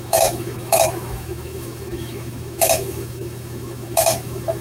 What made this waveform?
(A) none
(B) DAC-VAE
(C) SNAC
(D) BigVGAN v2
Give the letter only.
B